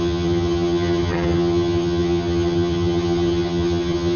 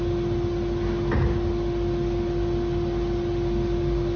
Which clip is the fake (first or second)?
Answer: first